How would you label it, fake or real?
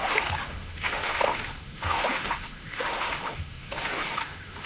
fake